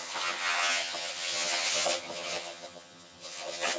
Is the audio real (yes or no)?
no